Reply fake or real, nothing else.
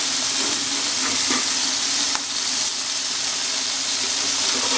real